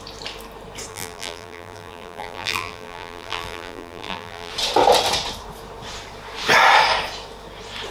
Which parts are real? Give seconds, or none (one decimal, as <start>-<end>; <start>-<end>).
0.0-0.9; 4.5-7.9